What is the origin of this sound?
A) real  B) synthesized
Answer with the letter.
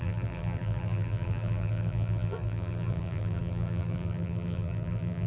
B